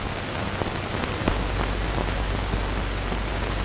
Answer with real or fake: real